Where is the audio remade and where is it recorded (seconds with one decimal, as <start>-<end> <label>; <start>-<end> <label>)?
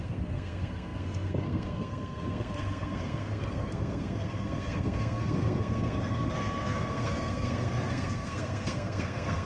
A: 0.0-9.5 remade